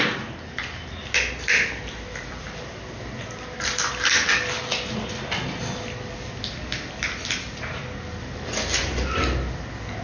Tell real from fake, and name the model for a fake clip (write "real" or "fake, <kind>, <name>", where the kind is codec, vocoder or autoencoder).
real